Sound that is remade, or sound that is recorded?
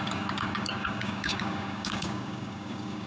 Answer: remade